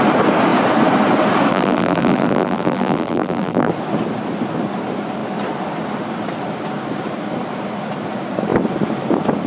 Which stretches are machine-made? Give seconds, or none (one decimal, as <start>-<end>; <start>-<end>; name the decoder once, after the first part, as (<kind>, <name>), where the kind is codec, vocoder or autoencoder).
1.5-3.7 (vocoder, BigVGAN v2)